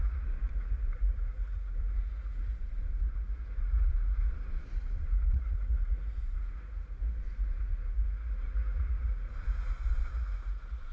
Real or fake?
fake